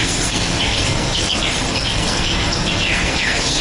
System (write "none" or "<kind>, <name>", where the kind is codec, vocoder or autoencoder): codec, SNAC